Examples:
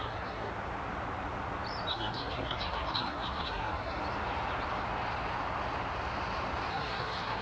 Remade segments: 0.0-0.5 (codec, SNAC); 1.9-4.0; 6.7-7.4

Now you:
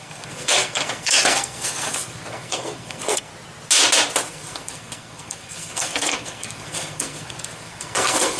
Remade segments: 0.0-3.3 (codec, SNAC); 4.3-8.4